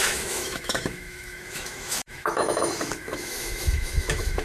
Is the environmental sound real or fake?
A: fake